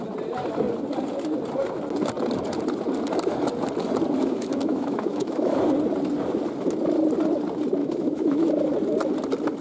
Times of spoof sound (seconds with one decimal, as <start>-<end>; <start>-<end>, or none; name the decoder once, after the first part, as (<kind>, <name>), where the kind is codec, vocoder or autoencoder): 4.2-5.6 (autoencoder, DAC-VAE); 7.8-8.5

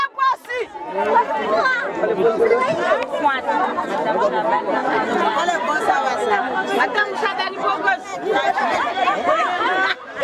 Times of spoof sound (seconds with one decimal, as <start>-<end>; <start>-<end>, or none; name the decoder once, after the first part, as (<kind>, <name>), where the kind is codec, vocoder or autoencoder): 1.4-2.1 (vocoder, BigVGAN v2); 4.8-5.8

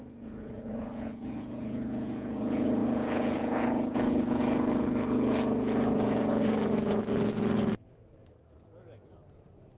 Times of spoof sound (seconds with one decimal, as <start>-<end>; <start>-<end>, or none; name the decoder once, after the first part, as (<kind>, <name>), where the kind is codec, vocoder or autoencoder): 0.0-9.8 (vocoder, Vocos)

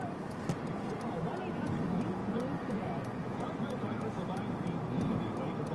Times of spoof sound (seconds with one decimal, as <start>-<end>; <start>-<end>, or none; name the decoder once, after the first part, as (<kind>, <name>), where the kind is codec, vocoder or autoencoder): 2.2-4.0 (vocoder, Vocos)

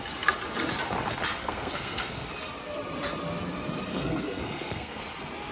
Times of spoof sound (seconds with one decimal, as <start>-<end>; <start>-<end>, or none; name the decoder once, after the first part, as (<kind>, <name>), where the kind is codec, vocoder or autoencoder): 1.4-2.3 (codec, SNAC); 3.9-5.0

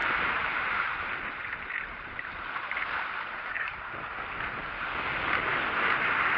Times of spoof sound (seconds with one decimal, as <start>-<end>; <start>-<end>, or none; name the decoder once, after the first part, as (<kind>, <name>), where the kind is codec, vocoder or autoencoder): 0.0-3.8 (vocoder, BigVGAN v2)

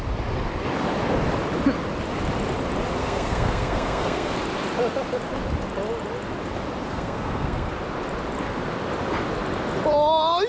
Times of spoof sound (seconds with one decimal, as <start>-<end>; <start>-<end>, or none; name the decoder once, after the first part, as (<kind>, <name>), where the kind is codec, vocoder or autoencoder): 3.0-4.3 (codec, SNAC); 6.9-7.7